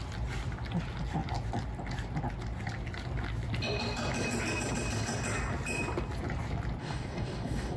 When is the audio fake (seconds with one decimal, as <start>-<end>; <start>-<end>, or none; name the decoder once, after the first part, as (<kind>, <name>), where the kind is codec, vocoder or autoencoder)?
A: 6.8-7.8 (codec, DAC)